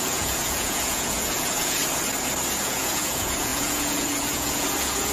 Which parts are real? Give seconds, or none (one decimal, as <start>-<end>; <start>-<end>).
1.8-2.6